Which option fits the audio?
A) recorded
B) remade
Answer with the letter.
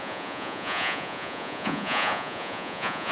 B